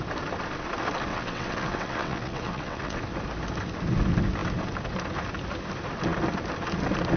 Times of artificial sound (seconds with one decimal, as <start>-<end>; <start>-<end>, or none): 1.1-3.0